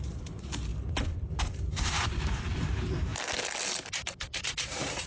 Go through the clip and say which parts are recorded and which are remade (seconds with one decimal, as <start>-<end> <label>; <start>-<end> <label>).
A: 0.0-0.7 remade; 0.7-1.4 recorded; 1.4-3.1 remade; 3.1-4.1 recorded; 4.1-5.1 remade

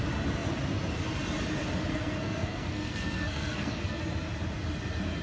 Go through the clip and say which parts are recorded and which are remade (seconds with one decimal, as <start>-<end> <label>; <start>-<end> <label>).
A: 0.0-1.9 recorded; 1.9-4.0 remade; 4.0-5.2 recorded